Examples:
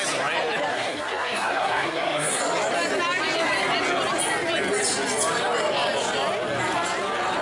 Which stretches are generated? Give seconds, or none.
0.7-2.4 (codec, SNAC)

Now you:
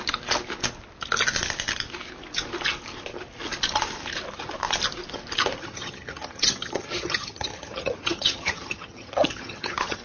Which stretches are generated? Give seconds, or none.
5.6-10.0 (vocoder, HiFi-GAN)

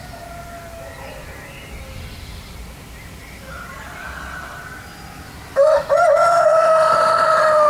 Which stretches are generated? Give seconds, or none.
6.3-7.7 (autoencoder, DAC-VAE)

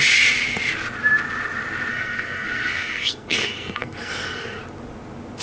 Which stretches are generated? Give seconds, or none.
1.9-4.6 (codec, SNAC)